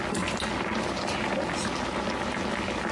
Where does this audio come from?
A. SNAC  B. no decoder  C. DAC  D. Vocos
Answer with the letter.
B